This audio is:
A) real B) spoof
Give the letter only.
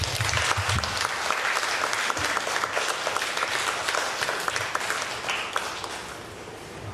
A